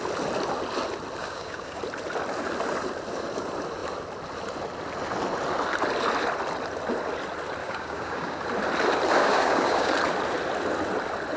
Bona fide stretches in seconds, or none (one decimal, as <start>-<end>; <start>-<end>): 0.0-1.2; 1.8-7.6; 8.4-9.2; 9.9-11.4